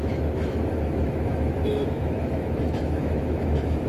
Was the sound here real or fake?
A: fake